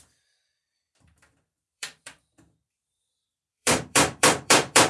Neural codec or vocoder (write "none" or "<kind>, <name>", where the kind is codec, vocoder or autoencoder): vocoder, BigVGAN v2